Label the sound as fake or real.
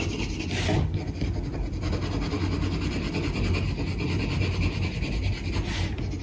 real